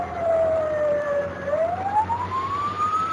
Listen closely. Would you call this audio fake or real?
fake